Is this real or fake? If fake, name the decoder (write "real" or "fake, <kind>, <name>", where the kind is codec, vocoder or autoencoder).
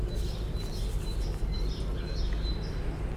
real